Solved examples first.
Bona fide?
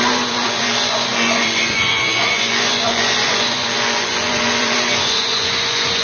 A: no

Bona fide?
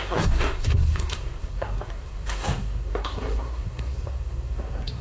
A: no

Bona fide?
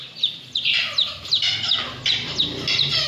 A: yes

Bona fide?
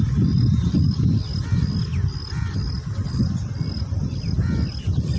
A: yes